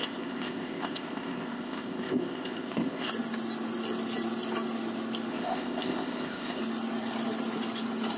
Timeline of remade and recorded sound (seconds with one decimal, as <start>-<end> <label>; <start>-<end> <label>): 0.0-3.1 remade; 3.1-5.3 recorded; 5.3-6.6 remade; 6.6-8.2 recorded